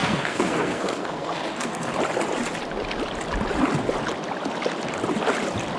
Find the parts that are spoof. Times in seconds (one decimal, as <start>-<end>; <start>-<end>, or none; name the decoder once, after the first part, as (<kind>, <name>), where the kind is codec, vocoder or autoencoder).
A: 0.0-1.9 (codec, SNAC)